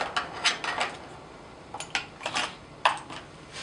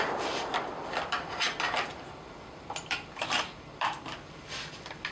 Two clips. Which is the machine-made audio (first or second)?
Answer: second